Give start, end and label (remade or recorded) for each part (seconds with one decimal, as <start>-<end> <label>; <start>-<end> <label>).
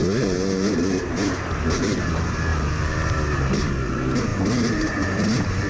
0.0-5.7 remade